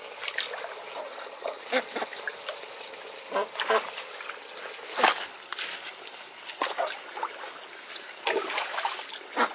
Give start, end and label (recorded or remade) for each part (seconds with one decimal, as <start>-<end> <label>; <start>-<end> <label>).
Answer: 0.0-1.0 recorded; 1.0-1.6 remade; 1.6-9.5 recorded